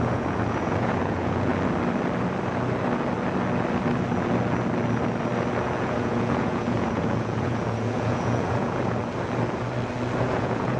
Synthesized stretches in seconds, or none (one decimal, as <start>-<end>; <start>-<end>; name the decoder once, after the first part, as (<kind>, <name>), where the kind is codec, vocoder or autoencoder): 0.0-1.5 (vocoder, Vocos); 5.8-9.0; 10.2-10.8